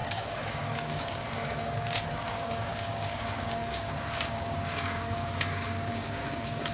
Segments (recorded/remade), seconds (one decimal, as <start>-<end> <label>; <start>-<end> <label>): 0.0-6.7 remade